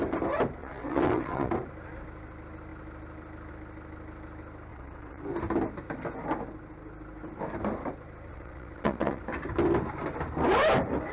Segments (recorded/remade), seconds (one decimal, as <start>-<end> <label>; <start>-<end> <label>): 0.0-0.6 recorded; 0.6-1.5 remade; 1.5-4.7 recorded; 4.7-5.2 remade; 5.2-8.3 recorded; 8.3-9.2 remade; 9.2-11.1 recorded